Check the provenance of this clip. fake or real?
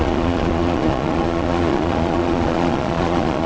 fake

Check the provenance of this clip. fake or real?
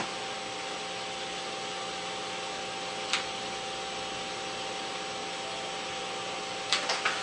real